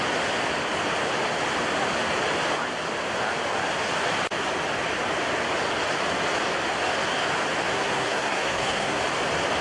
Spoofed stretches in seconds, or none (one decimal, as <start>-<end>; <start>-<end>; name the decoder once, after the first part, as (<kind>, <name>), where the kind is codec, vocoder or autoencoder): 7.7-9.0 (codec, SNAC)